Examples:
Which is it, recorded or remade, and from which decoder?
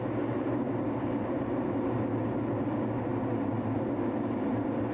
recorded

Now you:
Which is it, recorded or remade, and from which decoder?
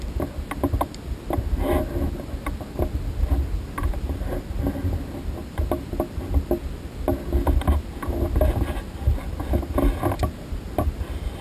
recorded